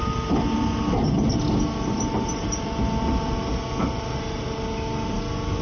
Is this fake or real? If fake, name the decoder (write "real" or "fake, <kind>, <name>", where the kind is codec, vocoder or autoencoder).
real